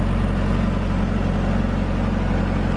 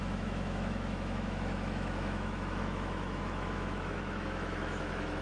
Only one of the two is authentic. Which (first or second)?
first